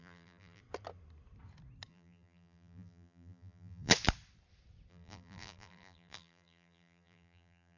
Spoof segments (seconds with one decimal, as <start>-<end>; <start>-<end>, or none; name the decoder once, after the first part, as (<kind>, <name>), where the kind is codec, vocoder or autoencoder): 0.0-0.6 (vocoder, BigVGAN v2); 1.9-3.9; 4.9-7.8